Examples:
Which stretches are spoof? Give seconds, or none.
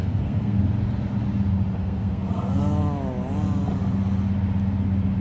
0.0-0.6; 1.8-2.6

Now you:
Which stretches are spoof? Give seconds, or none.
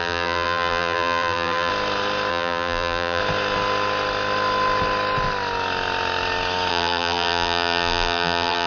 0.0-1.7; 2.3-3.2; 6.7-8.7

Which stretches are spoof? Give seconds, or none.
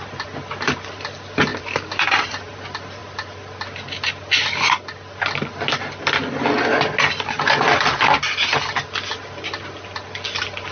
1.5-2.6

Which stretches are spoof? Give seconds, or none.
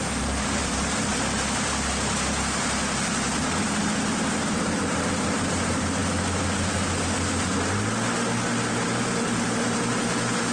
0.0-1.1; 3.6-6.0; 8.7-10.5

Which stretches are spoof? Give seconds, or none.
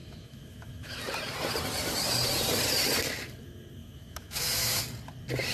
0.0-1.0; 3.8-4.8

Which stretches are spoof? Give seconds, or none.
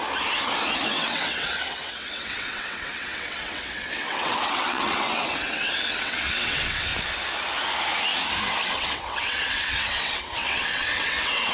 0.9-6.9; 8.7-11.5